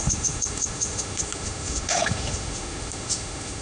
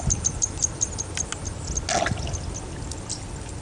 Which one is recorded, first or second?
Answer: second